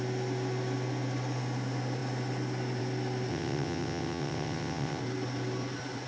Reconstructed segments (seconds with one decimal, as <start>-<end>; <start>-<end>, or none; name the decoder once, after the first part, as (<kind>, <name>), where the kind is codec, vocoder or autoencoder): 3.3-5.0 (vocoder, WaveNeXt)